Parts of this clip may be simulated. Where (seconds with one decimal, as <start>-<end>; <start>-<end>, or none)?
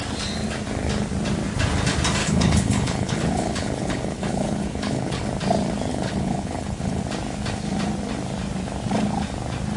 2.2-5.3; 5.9-7.0